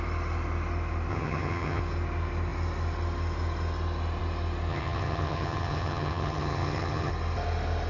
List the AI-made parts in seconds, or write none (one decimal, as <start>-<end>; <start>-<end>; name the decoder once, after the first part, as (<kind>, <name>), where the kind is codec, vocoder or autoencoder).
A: 1.1-1.8 (vocoder, HiFi-GAN); 4.7-7.1